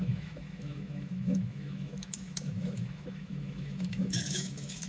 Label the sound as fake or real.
fake